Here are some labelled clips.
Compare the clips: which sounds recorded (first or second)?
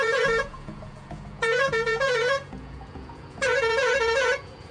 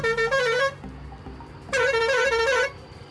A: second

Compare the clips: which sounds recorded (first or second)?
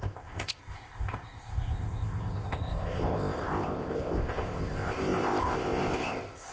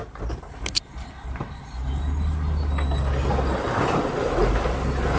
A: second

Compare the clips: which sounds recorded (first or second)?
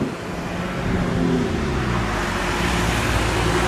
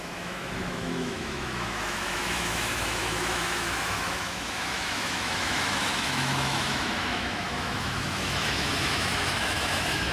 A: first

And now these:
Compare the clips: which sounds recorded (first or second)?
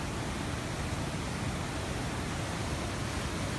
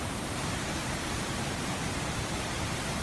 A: first